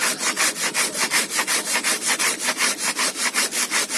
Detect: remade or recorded recorded